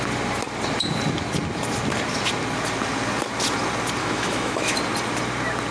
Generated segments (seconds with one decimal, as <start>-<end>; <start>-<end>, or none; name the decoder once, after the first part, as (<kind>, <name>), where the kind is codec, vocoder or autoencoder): 4.0-4.8 (autoencoder, DAC-VAE)